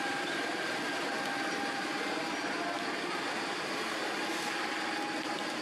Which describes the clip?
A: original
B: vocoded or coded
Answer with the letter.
A